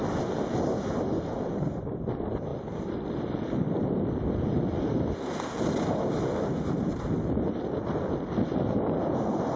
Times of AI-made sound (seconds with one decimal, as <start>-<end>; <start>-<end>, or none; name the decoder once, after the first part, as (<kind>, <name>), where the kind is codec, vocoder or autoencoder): 2.5-3.8 (vocoder, BigVGAN v2)